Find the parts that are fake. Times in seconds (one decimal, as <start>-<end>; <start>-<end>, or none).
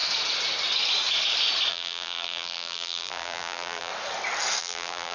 1.7-3.9; 4.6-5.1